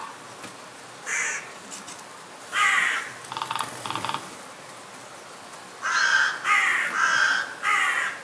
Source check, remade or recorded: recorded